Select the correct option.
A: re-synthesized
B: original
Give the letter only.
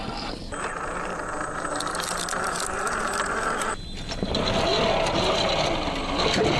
B